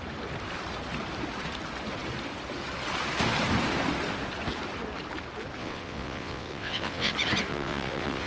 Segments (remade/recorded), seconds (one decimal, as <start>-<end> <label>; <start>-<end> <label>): 0.0-5.6 recorded; 5.6-7.1 remade; 7.1-7.5 recorded; 7.5-8.3 remade